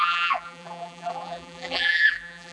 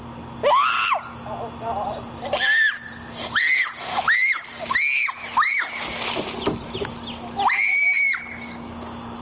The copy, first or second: first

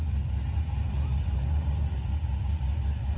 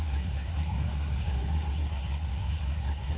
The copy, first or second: second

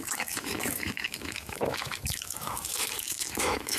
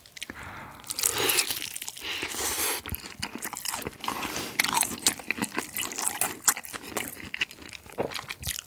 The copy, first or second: first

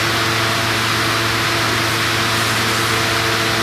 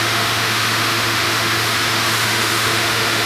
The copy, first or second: second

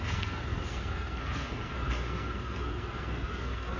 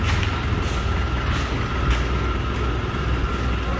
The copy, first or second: first